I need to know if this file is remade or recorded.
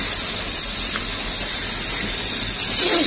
recorded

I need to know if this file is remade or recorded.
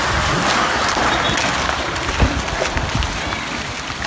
recorded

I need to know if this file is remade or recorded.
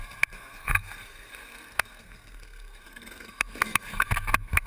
remade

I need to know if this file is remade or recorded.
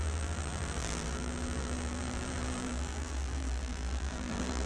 remade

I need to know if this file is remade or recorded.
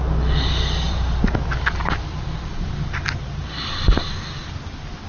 remade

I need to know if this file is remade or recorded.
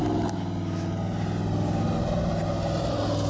recorded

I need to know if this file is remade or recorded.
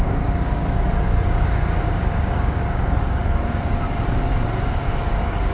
remade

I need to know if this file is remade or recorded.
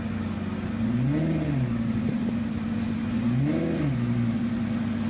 recorded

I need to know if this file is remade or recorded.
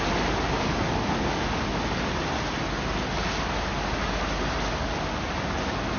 recorded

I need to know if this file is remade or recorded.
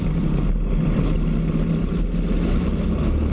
recorded